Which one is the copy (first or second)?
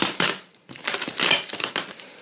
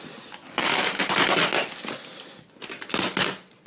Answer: first